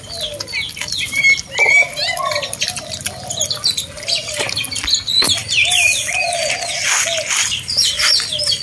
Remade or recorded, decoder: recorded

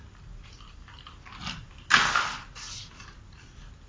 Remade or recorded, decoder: recorded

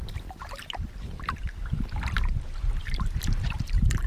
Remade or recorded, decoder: remade, vocoder, BigVGAN v2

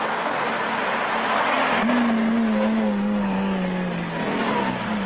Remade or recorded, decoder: recorded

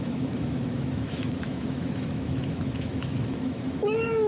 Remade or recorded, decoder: remade, autoencoder, DAC-VAE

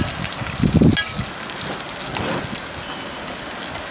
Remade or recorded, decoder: recorded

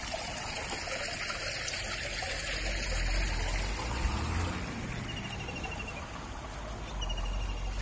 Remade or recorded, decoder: recorded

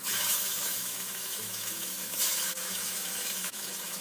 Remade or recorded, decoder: remade, autoencoder, DAC-VAE